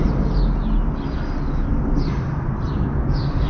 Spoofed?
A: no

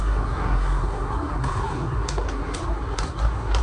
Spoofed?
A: yes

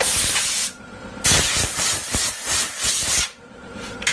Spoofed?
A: yes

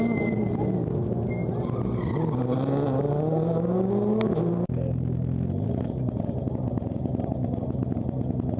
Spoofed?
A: no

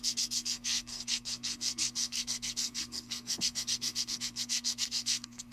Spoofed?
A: yes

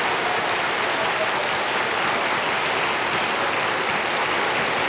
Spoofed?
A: no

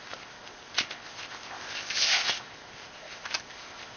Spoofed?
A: yes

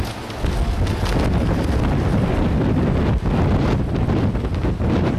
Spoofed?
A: no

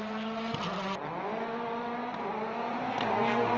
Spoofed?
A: no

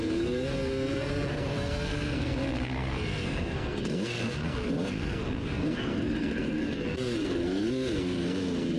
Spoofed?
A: yes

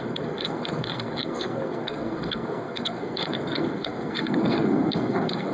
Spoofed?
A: yes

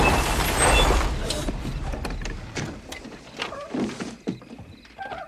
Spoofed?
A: no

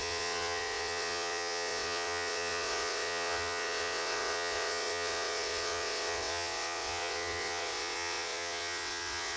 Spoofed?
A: yes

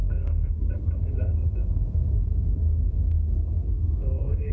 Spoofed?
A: yes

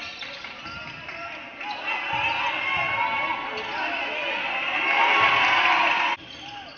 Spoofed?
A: no